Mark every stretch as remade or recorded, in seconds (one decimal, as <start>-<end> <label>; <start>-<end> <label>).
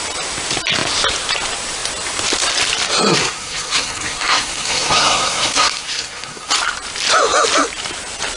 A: 0.0-3.2 recorded; 3.2-6.5 remade; 6.5-8.4 recorded